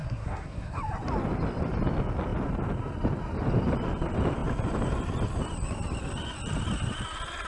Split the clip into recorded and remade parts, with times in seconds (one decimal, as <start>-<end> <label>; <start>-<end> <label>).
0.0-0.8 remade; 0.8-7.5 recorded